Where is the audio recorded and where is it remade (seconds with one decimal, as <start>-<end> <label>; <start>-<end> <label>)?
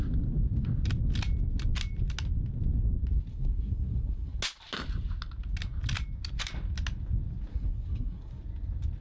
0.0-3.3 recorded; 3.3-4.4 remade; 4.4-7.5 recorded; 7.5-8.4 remade; 8.4-9.0 recorded